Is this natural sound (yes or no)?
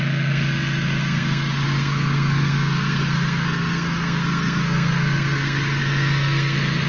no